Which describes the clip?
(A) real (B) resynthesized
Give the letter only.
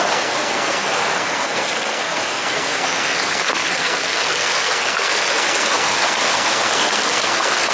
B